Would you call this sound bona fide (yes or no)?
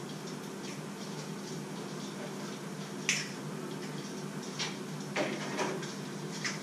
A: yes